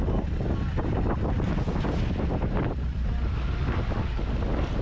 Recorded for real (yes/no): yes